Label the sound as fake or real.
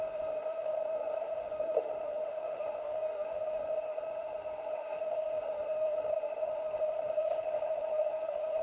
fake